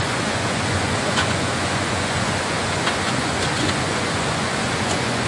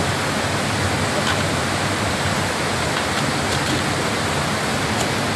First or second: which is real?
second